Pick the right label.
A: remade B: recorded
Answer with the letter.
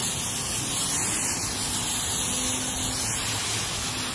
B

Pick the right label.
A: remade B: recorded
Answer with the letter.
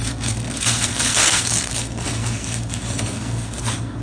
A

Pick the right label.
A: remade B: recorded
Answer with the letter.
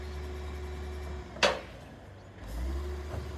B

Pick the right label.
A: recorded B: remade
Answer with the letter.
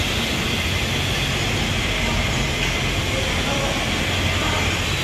A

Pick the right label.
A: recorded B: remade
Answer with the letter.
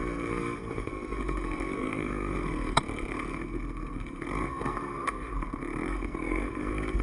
B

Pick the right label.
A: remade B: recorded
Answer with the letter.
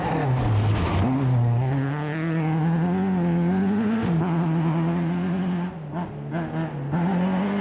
B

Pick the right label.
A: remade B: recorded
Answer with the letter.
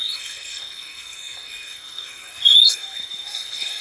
A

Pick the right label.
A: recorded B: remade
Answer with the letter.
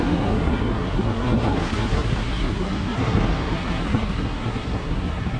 B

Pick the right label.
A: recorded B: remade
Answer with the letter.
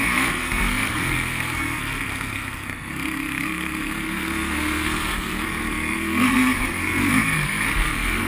B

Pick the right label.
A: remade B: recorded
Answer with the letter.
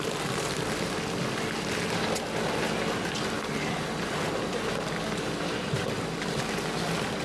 B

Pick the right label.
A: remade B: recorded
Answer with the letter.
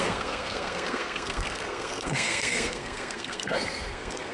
A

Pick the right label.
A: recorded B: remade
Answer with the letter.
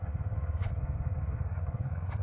B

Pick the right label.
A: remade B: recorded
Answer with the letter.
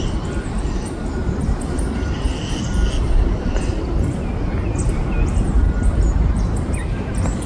B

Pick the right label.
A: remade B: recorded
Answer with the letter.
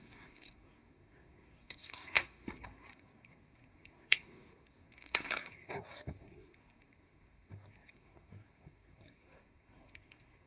A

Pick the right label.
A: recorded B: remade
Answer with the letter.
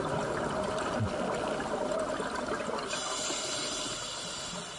A